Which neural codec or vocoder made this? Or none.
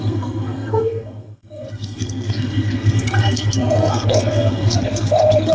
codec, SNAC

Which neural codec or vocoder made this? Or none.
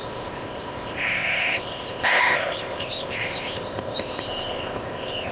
codec, ZipCodec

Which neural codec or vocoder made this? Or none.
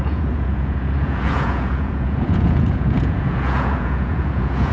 vocoder, Vocos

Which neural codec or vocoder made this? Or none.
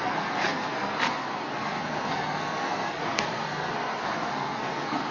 codec, SNAC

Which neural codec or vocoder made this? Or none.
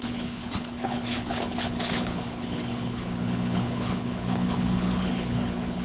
codec, HILCodec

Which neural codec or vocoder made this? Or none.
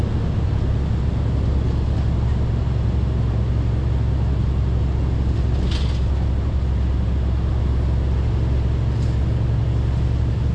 none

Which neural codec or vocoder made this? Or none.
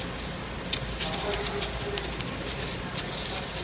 none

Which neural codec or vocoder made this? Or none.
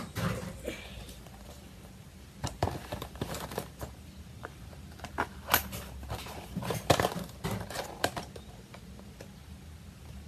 vocoder, BigVGAN v2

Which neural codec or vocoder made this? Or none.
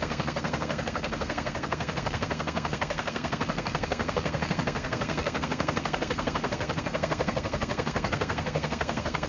codec, SNAC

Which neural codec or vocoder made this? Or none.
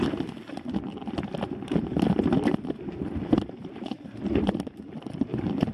none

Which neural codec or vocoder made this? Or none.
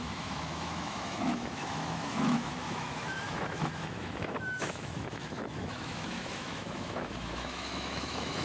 autoencoder, DAC-VAE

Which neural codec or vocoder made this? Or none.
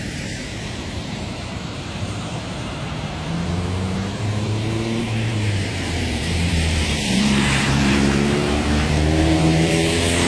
vocoder, BigVGAN v2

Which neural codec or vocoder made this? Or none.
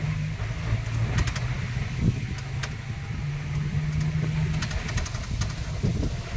none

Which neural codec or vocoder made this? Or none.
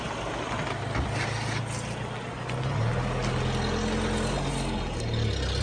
none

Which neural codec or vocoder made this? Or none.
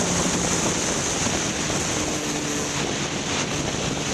none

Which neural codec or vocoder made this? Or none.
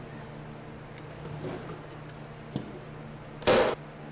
none